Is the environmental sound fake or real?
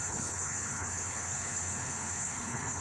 fake